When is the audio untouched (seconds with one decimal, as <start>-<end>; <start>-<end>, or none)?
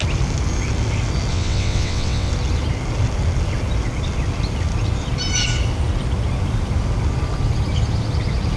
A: 0.0-1.3; 2.3-8.6